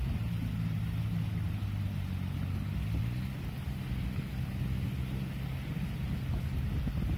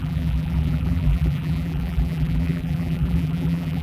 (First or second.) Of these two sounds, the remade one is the second